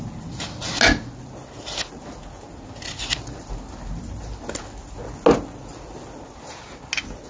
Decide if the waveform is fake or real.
real